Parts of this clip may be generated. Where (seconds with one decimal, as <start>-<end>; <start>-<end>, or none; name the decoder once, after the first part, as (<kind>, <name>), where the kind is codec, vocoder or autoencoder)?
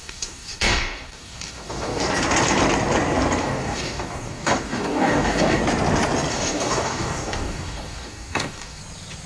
0.0-2.0 (codec, DAC); 3.4-5.6; 6.3-8.8